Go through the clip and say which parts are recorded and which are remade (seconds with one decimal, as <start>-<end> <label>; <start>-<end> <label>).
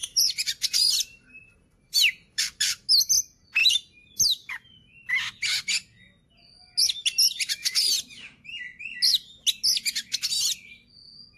0.0-2.4 remade; 2.4-3.6 recorded; 3.6-4.1 remade; 4.1-7.6 recorded; 7.6-8.6 remade; 8.6-11.4 recorded